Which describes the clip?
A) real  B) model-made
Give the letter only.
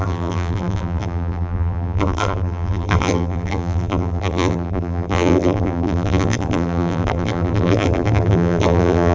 B